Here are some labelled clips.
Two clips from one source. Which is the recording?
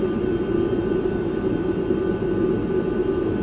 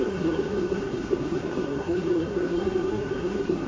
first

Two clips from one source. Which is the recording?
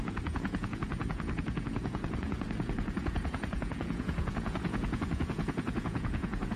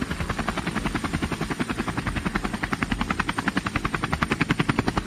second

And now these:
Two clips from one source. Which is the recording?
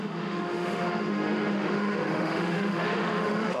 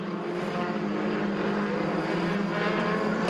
second